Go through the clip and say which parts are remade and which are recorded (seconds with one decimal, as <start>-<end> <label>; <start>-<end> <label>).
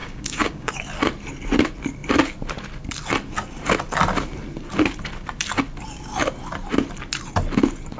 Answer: 0.0-0.7 remade; 0.7-8.0 recorded